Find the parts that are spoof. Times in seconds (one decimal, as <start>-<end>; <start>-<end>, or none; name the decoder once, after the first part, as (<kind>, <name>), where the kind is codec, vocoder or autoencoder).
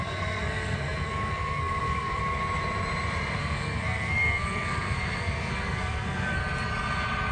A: 0.0-2.2 (codec, SNAC); 3.4-6.4